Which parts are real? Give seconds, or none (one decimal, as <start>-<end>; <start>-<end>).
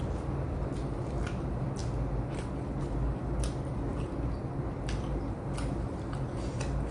0.0-6.9